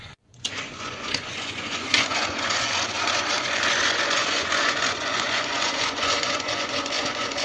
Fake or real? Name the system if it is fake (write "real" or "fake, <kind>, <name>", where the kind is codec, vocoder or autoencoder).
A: fake, vocoder, Vocos